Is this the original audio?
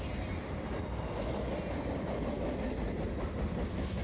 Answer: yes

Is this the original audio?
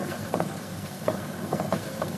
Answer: no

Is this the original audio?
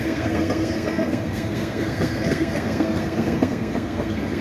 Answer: no